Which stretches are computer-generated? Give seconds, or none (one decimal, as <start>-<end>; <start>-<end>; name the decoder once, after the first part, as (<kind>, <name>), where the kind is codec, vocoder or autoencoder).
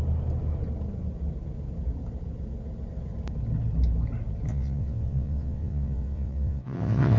4.5-7.2 (vocoder, WaveNeXt)